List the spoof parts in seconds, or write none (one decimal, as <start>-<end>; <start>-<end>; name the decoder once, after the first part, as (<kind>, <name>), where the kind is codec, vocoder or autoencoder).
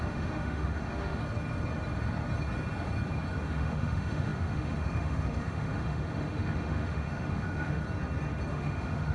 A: 0.0-1.2 (autoencoder, DAC-VAE); 3.4-7.8; 8.5-9.1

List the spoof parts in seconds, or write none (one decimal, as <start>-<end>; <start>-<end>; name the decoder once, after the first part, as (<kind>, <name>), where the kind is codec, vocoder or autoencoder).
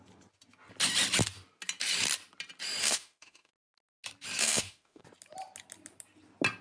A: 2.8-3.5 (autoencoder, DAC-VAE); 4.4-5.0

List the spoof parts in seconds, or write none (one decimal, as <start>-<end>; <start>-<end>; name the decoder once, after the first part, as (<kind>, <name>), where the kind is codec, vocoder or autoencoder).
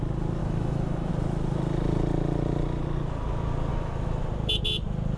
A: 0.4-1.1 (autoencoder, DAC-VAE); 3.7-4.2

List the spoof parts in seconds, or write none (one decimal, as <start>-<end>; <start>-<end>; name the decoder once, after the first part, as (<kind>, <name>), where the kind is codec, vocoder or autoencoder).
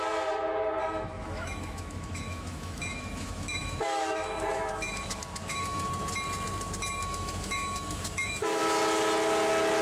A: 0.8-5.9 (autoencoder, DAC-VAE); 7.0-8.6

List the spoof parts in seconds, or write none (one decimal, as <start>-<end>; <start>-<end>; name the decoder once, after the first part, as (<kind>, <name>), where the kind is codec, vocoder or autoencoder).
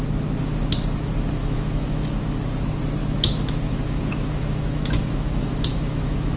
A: 1.4-2.2 (autoencoder, DAC-VAE); 3.0-6.4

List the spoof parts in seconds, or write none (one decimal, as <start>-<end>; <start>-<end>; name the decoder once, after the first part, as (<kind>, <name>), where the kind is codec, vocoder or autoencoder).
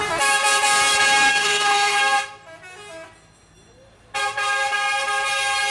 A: 1.3-2.0 (autoencoder, DAC-VAE)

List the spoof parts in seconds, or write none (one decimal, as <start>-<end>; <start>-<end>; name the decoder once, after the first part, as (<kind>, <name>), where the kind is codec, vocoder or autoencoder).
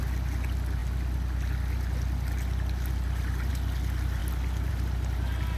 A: none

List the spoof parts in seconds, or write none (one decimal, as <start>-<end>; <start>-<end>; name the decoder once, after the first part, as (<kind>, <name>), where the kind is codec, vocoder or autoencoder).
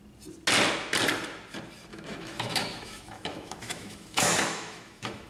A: 1.9-5.3 (autoencoder, DAC-VAE)